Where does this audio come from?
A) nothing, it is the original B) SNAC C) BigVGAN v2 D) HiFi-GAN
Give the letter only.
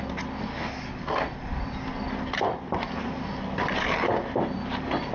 A